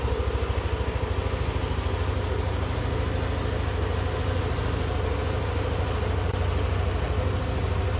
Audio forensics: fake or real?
real